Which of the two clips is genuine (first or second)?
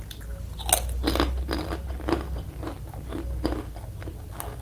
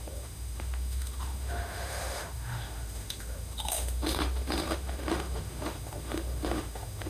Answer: first